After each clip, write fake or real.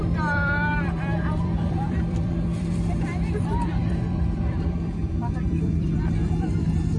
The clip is fake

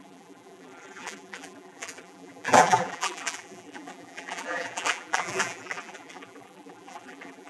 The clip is fake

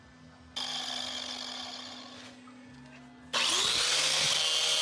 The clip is real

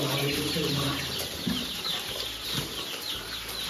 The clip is fake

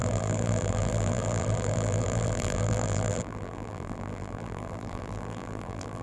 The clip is fake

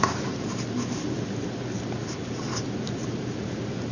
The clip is fake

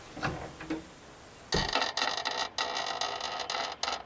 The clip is real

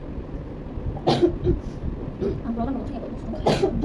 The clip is real